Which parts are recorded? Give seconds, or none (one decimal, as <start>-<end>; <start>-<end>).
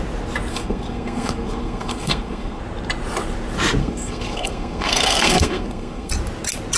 0.0-0.5; 2.6-3.8; 6.1-6.8